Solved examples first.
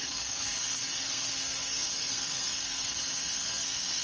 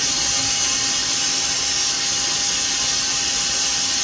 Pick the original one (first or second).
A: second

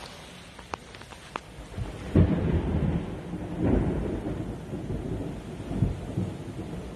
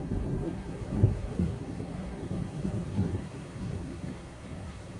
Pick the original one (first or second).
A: first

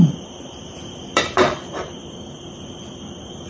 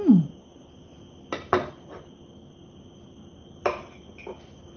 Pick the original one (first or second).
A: second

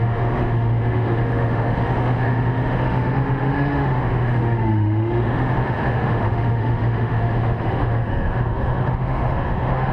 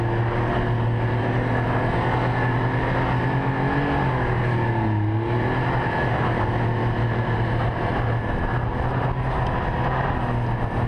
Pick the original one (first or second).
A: second